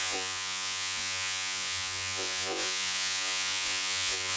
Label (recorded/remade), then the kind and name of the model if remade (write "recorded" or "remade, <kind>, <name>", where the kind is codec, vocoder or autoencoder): remade, vocoder, Vocos